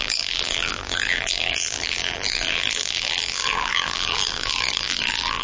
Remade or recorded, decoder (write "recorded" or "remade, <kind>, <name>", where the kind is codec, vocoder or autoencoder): remade, vocoder, BigVGAN v2